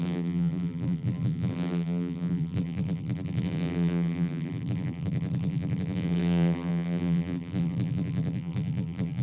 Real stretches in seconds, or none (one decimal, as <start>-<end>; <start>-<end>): none

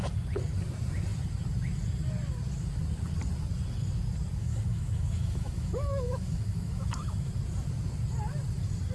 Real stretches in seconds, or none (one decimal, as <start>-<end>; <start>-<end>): 0.0-4.4; 7.3-8.9

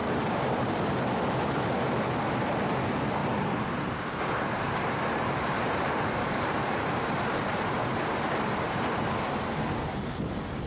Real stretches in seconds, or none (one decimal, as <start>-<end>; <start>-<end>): 1.0-3.2; 7.9-10.7

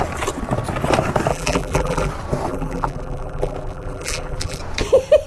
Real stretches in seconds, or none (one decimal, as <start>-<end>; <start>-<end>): 0.0-1.3; 2.1-2.5; 4.6-5.3